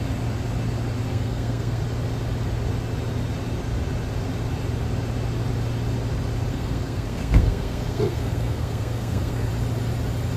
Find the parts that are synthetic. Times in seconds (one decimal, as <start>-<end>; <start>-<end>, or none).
1.1-1.8; 6.5-9.5